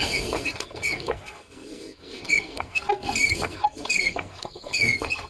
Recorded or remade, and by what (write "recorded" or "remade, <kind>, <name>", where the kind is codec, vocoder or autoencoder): remade, codec, SNAC